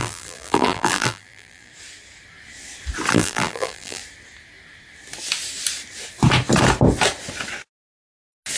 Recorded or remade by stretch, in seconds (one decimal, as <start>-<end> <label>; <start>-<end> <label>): 0.0-1.7 remade; 1.7-3.1 recorded; 3.1-4.0 remade; 4.0-8.6 recorded